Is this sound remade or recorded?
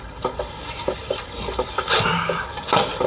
recorded